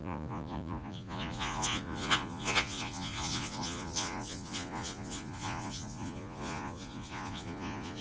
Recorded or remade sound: remade